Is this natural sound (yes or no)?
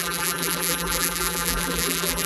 no